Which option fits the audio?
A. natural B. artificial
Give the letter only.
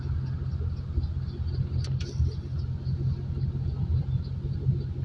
A